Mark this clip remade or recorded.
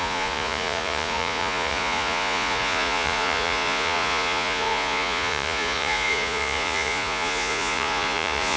remade